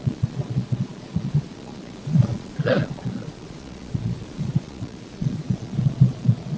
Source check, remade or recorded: remade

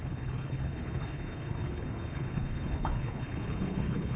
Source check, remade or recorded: remade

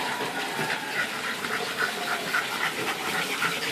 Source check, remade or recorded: recorded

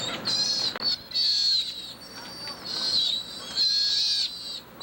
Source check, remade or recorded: recorded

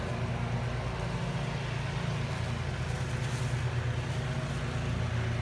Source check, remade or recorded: recorded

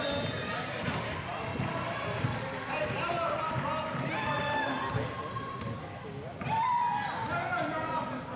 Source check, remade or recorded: recorded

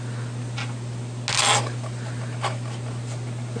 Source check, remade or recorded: recorded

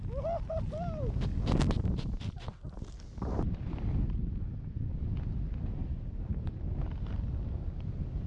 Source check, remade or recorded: recorded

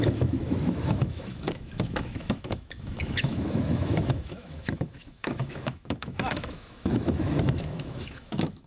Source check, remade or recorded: remade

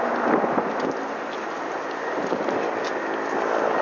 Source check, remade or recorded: recorded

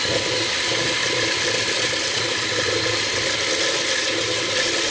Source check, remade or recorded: recorded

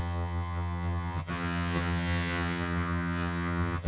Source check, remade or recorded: remade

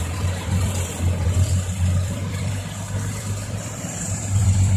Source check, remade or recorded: remade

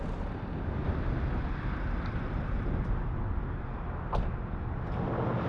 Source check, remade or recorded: recorded